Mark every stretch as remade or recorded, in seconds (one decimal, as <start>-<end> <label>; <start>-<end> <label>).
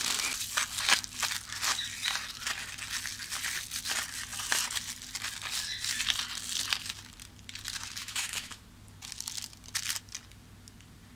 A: 0.0-8.0 recorded; 8.0-8.6 remade; 8.6-11.2 recorded